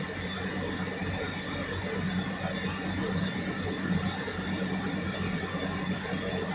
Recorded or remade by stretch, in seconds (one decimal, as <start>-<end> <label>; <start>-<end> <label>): 0.0-6.5 recorded